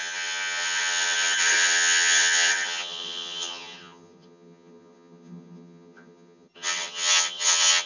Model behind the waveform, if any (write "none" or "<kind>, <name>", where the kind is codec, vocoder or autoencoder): vocoder, HiFi-GAN